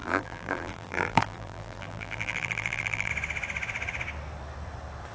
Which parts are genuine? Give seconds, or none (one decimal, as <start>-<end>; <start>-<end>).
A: 3.1-5.1